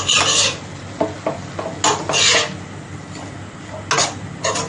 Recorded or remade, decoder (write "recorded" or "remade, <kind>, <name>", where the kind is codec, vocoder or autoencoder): recorded